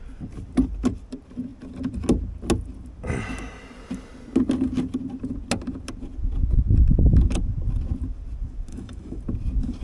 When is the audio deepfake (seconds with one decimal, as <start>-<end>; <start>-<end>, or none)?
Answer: 8.7-9.2